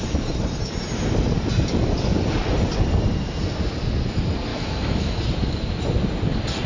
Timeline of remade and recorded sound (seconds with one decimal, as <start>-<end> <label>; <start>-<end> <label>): 0.0-4.5 recorded; 4.5-5.2 remade; 5.2-6.7 recorded